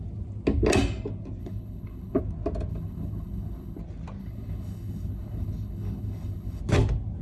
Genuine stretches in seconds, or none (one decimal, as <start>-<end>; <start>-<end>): 0.0-1.4; 2.2-2.7; 3.8-4.2; 6.6-7.2